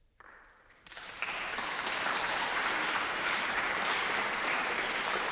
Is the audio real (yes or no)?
no